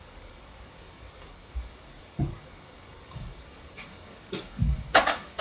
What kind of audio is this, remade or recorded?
remade